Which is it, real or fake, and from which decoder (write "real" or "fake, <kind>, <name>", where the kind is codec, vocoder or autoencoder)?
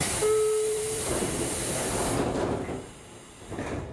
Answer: fake, vocoder, BigVGAN v2